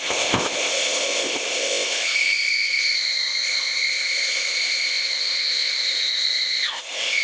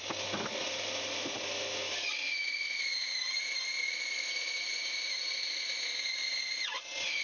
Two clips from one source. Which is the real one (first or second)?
second